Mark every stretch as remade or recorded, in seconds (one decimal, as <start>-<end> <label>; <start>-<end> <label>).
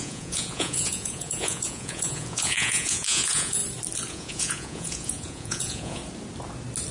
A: 0.0-3.6 remade; 3.6-4.1 recorded; 4.1-6.0 remade; 6.0-6.9 recorded